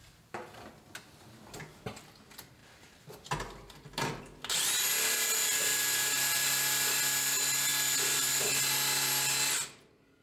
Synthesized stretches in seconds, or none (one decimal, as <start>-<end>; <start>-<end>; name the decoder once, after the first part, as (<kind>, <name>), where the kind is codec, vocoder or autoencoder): none